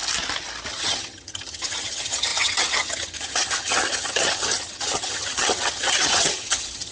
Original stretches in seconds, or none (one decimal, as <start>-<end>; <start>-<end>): 0.0-0.7